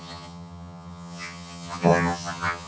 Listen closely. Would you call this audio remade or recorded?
remade